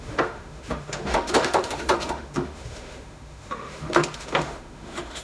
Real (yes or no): no